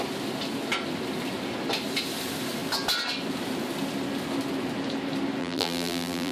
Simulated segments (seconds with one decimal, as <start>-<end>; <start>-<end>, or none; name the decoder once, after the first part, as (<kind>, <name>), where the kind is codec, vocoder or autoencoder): 5.4-6.3 (vocoder, BigVGAN v2)